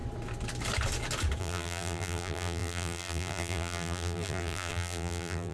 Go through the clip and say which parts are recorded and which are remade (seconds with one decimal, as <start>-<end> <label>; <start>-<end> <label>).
0.0-1.4 recorded; 1.4-5.5 remade